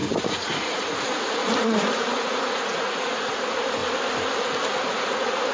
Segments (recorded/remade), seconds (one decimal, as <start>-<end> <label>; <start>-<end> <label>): 0.0-3.8 remade; 3.8-4.3 recorded; 4.3-5.5 remade